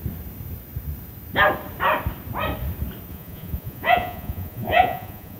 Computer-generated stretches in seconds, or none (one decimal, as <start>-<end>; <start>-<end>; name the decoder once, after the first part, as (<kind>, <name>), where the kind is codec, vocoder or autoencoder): 3.1-5.4 (vocoder, Vocos)